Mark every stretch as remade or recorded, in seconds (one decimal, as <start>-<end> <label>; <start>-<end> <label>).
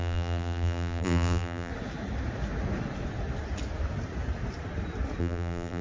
0.0-1.7 remade; 1.7-5.2 recorded; 5.2-5.8 remade